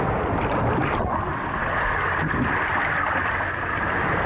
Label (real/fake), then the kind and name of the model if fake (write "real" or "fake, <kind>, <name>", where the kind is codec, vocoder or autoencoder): real